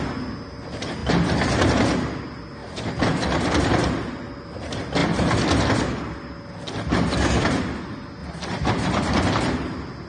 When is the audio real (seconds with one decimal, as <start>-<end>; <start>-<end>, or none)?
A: 0.0-2.6; 4.3-8.2; 8.7-10.1